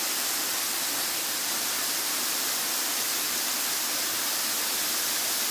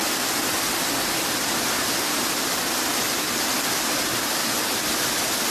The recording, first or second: second